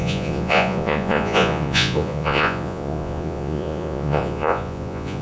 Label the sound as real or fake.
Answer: fake